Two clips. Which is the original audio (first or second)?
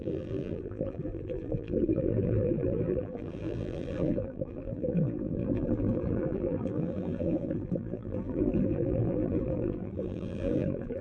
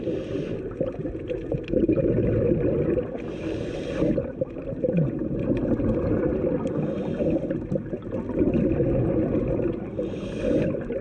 second